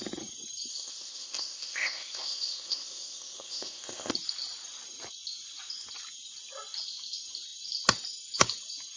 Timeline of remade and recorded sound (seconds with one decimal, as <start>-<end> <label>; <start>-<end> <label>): 0.0-0.7 recorded; 0.7-4.1 remade; 4.1-9.0 recorded